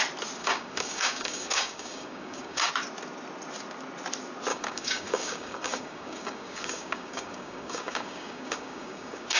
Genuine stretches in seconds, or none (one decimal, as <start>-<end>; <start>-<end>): 0.0-0.4; 2.7-4.5